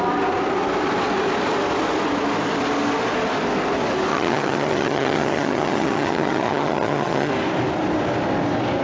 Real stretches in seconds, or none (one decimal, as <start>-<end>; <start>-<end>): 0.0-4.1; 7.3-8.8